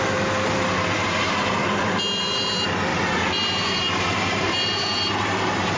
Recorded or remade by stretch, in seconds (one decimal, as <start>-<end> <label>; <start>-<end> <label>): 0.0-1.6 remade; 1.6-2.2 recorded; 2.2-5.8 remade